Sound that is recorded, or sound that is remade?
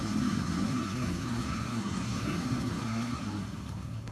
remade